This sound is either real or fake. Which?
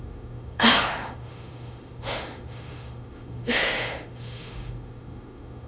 fake